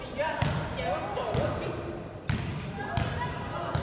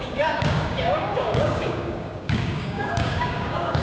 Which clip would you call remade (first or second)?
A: second